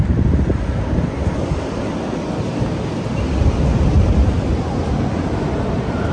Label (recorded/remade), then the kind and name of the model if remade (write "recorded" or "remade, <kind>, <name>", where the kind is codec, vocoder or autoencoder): remade, vocoder, BigVGAN v2